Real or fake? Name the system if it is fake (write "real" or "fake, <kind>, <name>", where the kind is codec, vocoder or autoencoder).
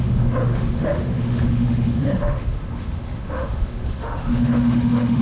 fake, autoencoder, DAC-VAE